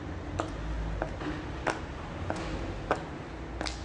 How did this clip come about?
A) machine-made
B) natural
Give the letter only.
B